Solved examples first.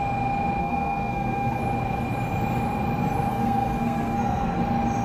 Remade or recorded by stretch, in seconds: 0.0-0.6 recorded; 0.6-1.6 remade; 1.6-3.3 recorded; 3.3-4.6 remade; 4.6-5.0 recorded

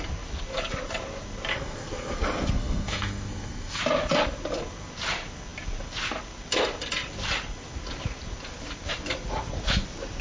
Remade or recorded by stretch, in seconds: 0.0-1.5 recorded; 1.5-3.8 remade; 3.8-10.2 recorded

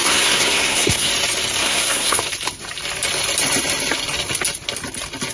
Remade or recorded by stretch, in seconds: 0.0-1.1 remade; 1.1-1.6 recorded; 1.6-2.2 remade; 2.2-5.3 recorded

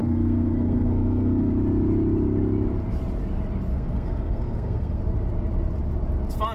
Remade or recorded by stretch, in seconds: 0.0-1.5 remade; 1.5-3.7 recorded; 3.7-5.0 remade; 5.0-6.5 recorded

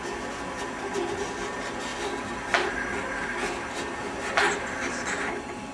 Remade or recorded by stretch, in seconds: 0.0-5.7 recorded

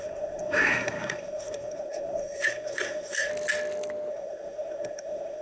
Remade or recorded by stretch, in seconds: 0.0-3.3 remade; 3.3-4.1 recorded; 4.1-5.4 remade